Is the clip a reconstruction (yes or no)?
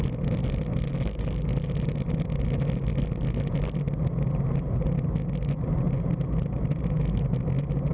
no